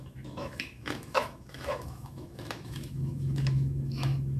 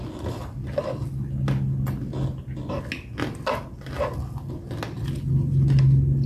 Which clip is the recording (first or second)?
second